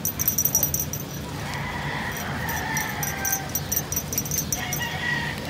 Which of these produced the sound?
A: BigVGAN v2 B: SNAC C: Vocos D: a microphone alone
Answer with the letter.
D